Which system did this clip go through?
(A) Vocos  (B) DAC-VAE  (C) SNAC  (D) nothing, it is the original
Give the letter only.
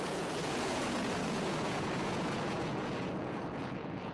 A